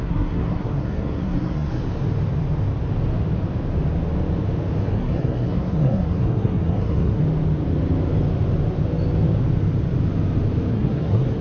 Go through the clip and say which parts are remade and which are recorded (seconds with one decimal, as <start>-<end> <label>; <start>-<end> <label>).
0.0-1.8 remade; 1.8-4.8 recorded; 4.8-7.2 remade; 7.2-10.7 recorded; 10.7-11.4 remade